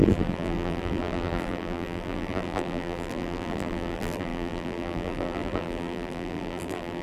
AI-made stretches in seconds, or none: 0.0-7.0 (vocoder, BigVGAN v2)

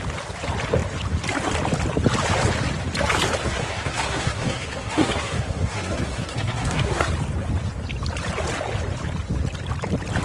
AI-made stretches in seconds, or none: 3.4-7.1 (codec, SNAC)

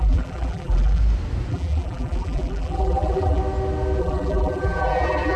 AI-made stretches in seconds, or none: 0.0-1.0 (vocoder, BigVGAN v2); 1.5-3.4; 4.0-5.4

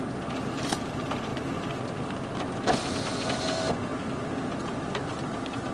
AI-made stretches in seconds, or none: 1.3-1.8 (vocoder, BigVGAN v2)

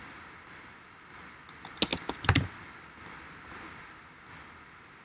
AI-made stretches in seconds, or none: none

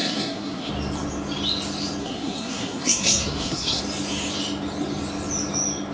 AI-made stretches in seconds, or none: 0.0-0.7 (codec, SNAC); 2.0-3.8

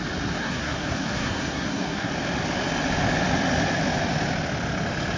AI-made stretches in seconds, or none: 0.4-2.1 (codec, SNAC)